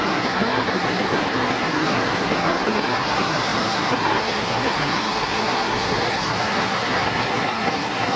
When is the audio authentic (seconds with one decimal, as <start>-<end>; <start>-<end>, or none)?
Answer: none